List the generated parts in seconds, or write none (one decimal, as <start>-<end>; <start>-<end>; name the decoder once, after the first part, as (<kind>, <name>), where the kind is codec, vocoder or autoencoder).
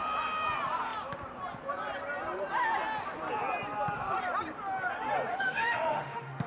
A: 5.3-6.5 (autoencoder, DAC-VAE)